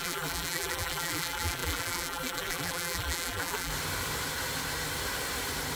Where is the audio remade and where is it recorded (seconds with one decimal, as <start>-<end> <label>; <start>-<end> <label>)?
0.0-3.7 remade; 3.7-5.8 recorded